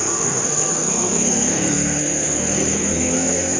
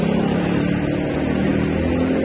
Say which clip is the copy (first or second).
first